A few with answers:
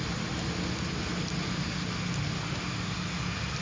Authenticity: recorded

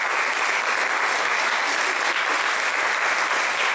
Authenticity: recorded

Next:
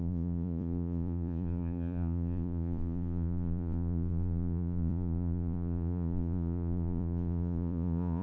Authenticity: remade